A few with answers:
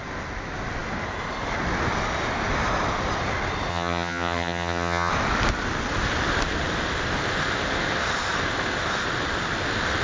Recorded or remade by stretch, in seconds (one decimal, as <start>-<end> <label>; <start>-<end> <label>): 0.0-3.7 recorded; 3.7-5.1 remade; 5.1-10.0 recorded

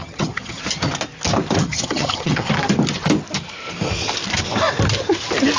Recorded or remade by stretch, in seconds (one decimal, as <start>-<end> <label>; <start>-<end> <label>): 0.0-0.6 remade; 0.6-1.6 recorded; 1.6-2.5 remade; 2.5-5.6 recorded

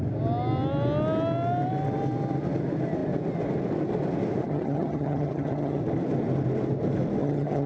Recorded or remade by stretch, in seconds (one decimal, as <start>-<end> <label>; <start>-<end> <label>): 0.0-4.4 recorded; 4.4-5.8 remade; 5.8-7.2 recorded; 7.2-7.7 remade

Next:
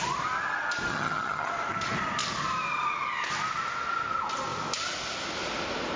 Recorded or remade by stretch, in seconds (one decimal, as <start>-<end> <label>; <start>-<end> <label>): 0.0-0.9 recorded; 0.9-1.5 remade; 1.5-6.0 recorded